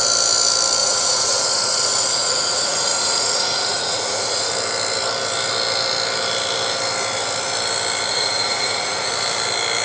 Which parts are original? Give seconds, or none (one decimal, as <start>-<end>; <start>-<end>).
0.0-0.8; 4.5-8.1; 9.1-9.8